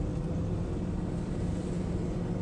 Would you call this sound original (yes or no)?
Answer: yes